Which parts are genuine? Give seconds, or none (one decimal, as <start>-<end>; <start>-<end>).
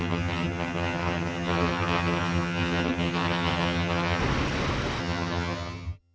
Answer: 4.2-5.0